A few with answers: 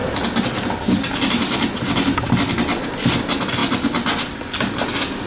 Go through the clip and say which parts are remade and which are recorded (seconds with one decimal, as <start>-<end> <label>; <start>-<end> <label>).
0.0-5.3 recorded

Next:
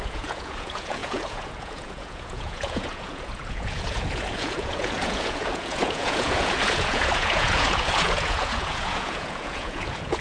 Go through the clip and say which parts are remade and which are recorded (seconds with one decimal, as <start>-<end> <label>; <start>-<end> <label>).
0.0-10.2 remade

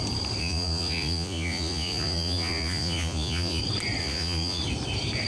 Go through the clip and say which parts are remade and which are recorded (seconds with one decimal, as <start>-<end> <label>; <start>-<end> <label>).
0.0-0.4 recorded; 0.4-3.6 remade; 3.6-4.0 recorded; 4.0-4.6 remade; 4.6-5.3 recorded

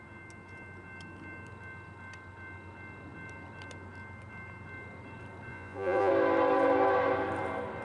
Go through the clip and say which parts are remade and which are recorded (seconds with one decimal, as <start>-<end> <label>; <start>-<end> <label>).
0.0-5.5 recorded; 5.5-6.1 remade; 6.1-7.8 recorded

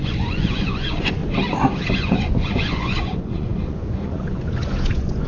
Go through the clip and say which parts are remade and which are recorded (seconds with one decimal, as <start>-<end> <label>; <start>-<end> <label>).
0.0-1.2 remade; 1.2-1.9 recorded; 1.9-5.3 remade